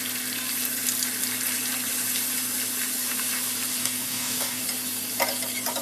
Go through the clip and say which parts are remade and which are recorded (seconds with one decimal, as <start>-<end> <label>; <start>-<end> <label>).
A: 0.0-3.8 recorded; 3.8-4.6 remade; 4.6-5.8 recorded